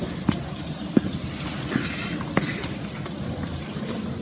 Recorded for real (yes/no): yes